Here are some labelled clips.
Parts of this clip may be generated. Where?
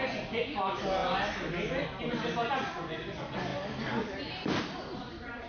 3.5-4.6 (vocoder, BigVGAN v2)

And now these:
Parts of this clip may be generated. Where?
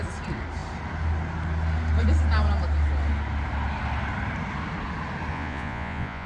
5.3-6.3 (vocoder, Vocos)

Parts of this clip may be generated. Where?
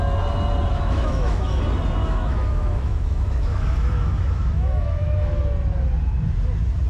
0.7-1.6 (autoencoder, DAC-VAE); 2.0-5.4